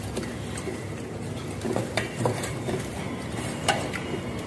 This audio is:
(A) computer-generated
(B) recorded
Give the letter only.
B